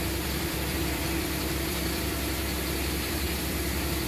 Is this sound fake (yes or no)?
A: yes